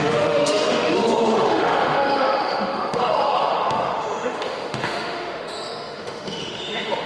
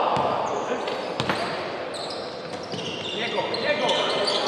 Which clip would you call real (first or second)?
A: second